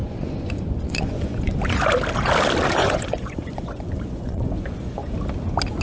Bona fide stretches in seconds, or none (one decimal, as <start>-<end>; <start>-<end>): 1.6-2.8; 5.1-5.8